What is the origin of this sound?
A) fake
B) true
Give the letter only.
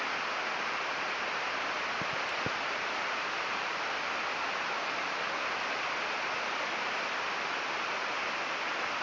B